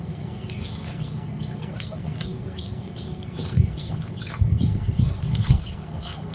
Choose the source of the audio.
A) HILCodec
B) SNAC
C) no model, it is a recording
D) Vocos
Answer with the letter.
B